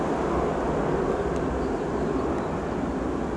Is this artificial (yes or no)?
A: no